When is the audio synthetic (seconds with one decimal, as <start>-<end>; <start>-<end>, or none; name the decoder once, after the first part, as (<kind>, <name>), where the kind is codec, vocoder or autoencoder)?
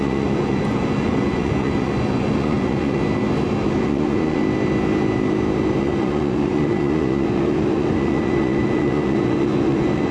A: 0.0-3.0 (vocoder, Vocos); 3.8-4.4; 5.8-10.1